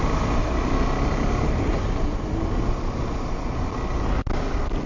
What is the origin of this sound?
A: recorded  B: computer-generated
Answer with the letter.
A